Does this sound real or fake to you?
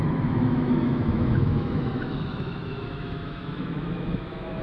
fake